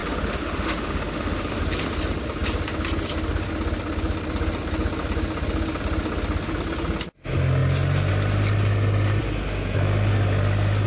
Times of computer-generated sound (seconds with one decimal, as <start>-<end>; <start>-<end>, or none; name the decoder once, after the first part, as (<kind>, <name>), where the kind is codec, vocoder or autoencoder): 0.0-1.6 (autoencoder, DAC-VAE)